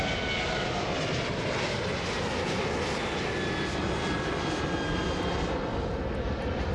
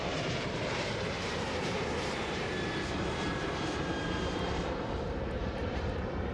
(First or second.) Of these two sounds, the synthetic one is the second